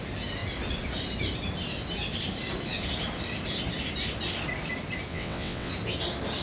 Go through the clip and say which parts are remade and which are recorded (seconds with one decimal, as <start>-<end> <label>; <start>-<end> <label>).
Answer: 0.0-5.1 recorded; 5.1-5.7 remade; 5.7-6.4 recorded